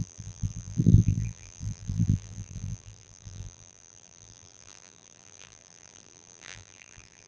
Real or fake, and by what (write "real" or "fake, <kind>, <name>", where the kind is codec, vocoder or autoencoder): fake, vocoder, BigVGAN v2